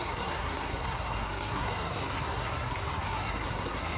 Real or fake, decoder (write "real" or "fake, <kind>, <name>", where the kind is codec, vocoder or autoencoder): fake, codec, SNAC